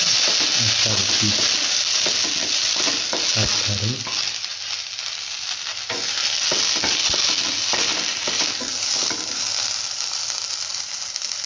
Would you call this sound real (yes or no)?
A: yes